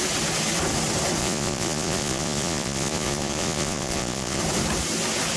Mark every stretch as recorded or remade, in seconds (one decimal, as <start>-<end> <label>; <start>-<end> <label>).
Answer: 0.0-1.2 recorded; 1.2-4.4 remade; 4.4-5.4 recorded